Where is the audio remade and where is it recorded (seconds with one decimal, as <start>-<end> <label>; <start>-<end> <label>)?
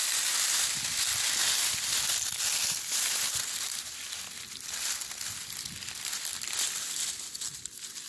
0.0-8.1 recorded